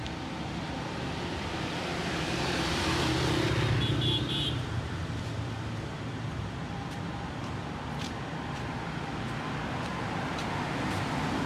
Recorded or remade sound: remade